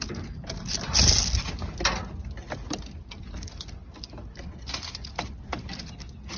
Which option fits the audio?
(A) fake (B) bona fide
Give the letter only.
B